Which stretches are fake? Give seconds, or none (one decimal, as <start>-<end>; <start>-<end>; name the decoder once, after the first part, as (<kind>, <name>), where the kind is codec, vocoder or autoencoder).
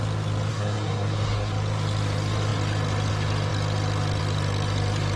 0.5-1.5 (codec, SNAC)